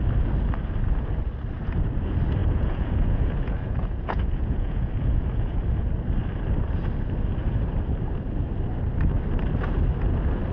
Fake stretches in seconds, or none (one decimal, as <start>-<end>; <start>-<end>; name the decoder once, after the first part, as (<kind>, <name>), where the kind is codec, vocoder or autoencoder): 2.4-5.6 (vocoder, Vocos)